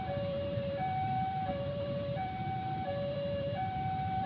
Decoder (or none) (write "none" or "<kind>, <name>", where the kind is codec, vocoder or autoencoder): vocoder, BigVGAN v2